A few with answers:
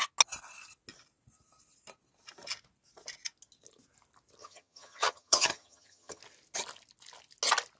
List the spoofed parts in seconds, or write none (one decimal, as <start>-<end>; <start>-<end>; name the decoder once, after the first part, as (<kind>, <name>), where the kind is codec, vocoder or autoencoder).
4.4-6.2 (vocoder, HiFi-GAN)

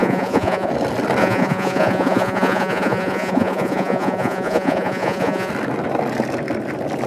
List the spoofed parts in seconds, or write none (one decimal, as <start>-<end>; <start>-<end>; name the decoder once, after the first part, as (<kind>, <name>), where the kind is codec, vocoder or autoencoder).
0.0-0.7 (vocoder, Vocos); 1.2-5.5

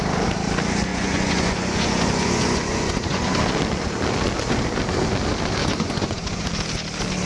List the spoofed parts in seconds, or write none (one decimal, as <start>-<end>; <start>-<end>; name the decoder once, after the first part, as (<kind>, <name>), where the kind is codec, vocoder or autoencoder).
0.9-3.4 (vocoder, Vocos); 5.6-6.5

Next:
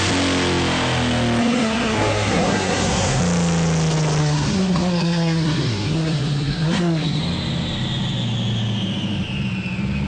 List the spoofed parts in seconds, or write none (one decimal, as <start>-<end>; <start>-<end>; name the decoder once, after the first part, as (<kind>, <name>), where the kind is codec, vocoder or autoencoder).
1.4-3.2 (codec, SNAC); 4.2-7.2